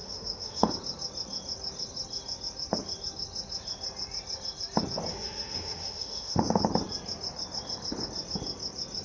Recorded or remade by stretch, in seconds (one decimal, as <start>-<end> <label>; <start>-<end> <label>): 0.0-0.7 remade; 0.7-5.1 recorded; 5.1-6.6 remade; 6.6-9.0 recorded